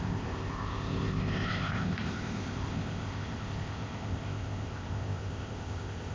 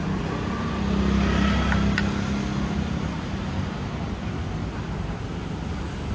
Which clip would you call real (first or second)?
second